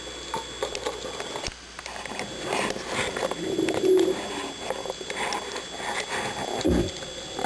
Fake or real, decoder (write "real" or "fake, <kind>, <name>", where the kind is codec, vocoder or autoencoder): real